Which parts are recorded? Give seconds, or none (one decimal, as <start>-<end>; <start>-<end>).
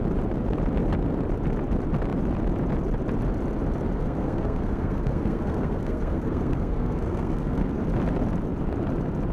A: 0.0-4.0; 7.8-9.3